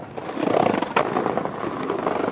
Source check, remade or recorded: recorded